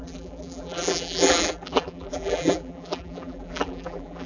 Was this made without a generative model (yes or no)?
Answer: no